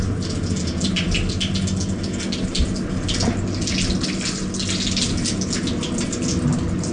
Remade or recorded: recorded